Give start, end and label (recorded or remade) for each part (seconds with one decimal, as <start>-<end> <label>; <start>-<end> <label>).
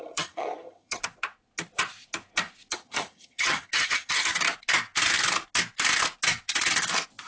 0.0-1.0 remade; 1.0-2.7 recorded; 2.7-4.3 remade; 4.3-7.3 recorded